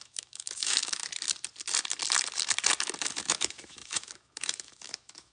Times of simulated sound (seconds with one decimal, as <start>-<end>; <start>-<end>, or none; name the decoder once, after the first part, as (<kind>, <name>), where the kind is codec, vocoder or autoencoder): 0.0-1.0 (autoencoder, DAC-VAE); 3.1-5.3